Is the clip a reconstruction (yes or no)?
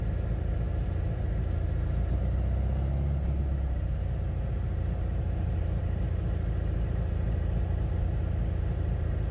no